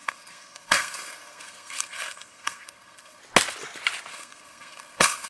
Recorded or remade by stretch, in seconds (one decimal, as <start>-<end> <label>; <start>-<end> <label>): 0.0-3.2 remade; 3.2-4.1 recorded; 4.1-5.3 remade